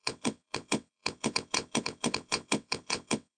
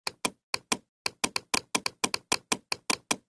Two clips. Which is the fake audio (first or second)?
first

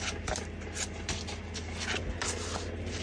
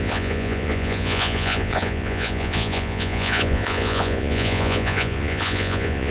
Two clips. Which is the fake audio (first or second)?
second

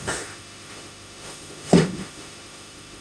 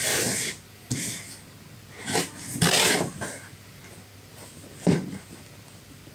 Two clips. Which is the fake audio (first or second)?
first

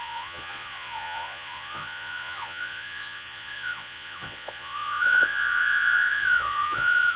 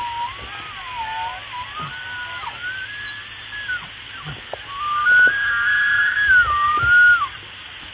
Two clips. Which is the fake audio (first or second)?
first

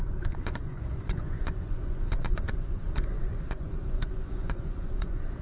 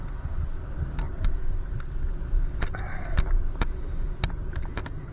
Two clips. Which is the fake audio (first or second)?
first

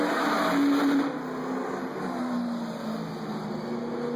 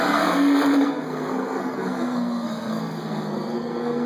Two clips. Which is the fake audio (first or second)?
second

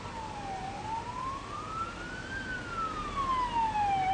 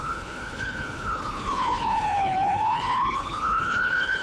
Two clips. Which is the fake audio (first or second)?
second